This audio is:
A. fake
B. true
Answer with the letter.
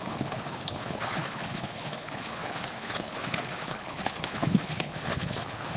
A